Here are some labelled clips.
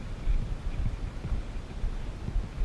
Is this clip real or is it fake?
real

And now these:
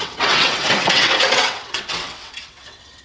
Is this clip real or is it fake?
fake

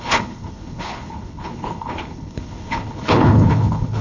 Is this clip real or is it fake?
fake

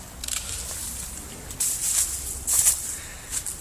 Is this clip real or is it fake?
real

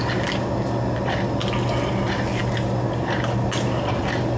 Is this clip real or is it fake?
real